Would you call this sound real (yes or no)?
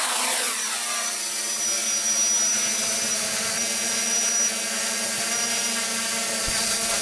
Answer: yes